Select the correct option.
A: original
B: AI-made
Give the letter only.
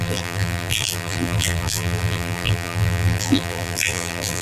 B